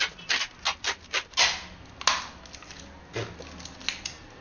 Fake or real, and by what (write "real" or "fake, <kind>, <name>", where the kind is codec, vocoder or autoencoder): real